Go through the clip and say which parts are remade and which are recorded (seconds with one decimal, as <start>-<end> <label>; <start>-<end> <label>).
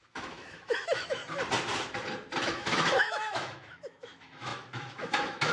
0.0-1.2 remade; 1.2-2.4 recorded; 2.4-5.5 remade